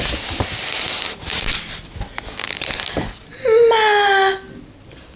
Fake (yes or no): no